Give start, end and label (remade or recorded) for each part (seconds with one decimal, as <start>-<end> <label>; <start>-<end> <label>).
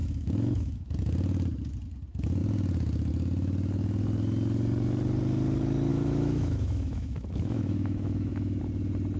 0.0-0.9 remade; 0.9-5.9 recorded; 5.9-8.6 remade; 8.6-9.2 recorded